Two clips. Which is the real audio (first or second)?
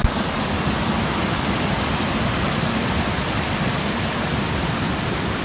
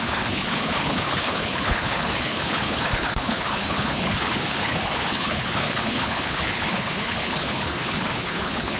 first